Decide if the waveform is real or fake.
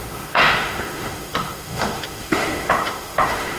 fake